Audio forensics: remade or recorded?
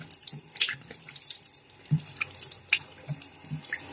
remade